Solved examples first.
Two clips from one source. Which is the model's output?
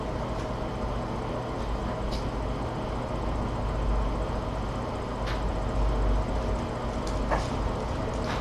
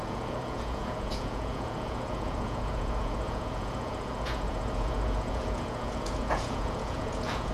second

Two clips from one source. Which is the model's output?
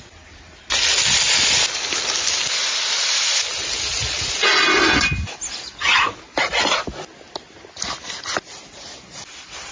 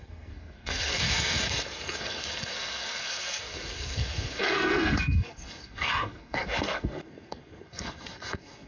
second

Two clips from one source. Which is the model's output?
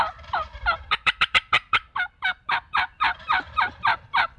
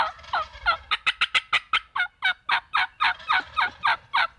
first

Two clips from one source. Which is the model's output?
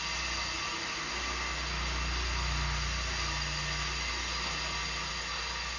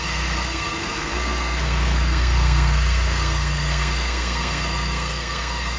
second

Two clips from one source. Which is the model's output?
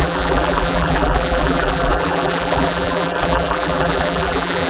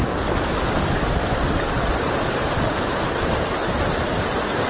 first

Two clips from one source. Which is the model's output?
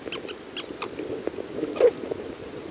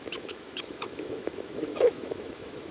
second